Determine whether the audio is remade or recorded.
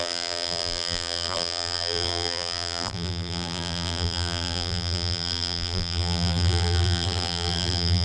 remade